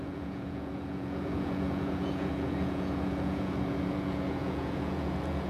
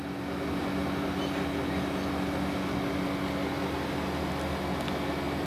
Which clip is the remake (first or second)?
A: first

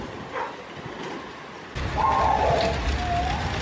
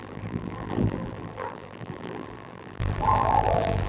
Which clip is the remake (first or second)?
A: second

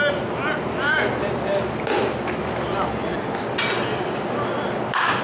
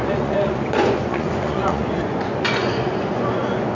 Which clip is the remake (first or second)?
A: second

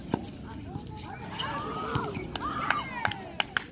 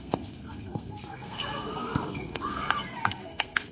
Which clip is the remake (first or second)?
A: second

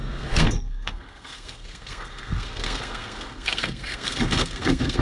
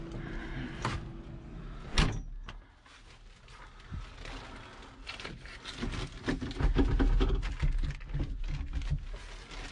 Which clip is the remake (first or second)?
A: first